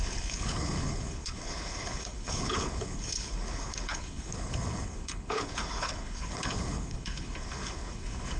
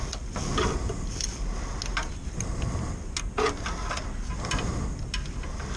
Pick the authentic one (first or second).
second